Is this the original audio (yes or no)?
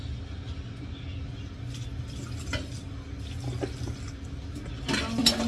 yes